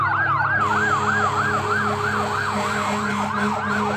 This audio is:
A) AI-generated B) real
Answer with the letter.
B